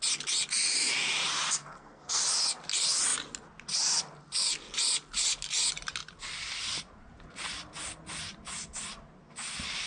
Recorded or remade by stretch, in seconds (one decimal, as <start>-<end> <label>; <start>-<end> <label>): 0.0-1.6 recorded; 1.6-2.2 remade; 2.2-9.9 recorded